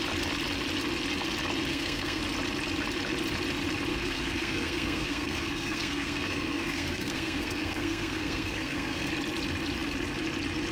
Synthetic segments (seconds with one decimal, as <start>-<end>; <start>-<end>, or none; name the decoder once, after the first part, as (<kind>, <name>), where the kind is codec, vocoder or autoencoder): 1.7-2.2 (codec, SNAC); 3.9-9.1